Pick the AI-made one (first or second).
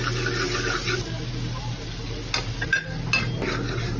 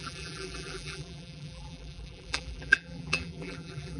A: second